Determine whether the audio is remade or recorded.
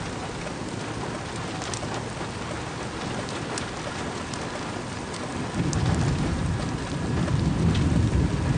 recorded